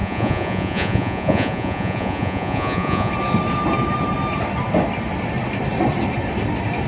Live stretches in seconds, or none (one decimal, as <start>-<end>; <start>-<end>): 3.1-6.9